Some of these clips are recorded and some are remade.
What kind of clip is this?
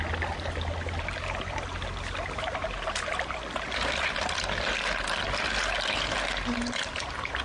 recorded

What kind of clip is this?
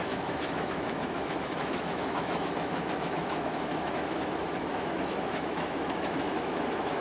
remade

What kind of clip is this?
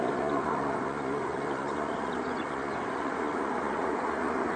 remade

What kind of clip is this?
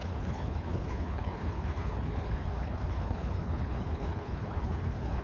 remade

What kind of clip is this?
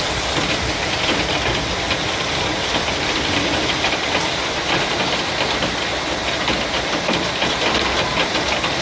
remade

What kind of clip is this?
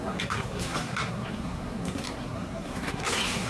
remade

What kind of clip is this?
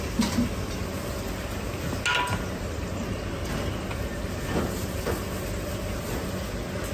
recorded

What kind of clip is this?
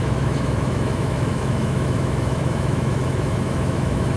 remade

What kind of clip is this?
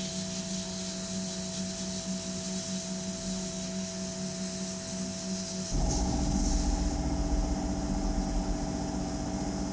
recorded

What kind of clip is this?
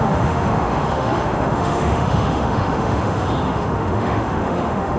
remade